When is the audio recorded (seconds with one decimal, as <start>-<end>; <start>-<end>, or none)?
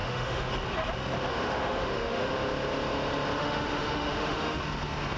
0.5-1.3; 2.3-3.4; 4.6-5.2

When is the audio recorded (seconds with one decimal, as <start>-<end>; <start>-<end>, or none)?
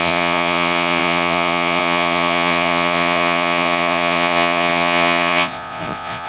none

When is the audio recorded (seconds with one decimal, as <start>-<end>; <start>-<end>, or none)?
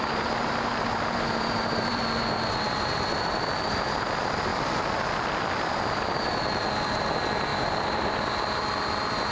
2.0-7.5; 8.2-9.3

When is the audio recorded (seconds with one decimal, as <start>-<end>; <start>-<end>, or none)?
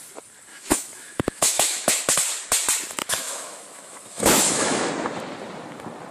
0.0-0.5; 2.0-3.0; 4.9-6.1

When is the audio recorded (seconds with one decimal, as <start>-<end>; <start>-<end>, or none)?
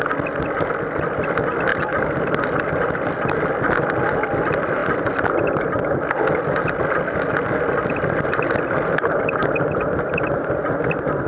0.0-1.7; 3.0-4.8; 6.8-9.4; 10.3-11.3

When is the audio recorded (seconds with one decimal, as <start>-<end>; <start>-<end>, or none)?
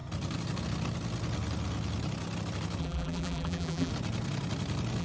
0.0-2.8; 3.9-5.0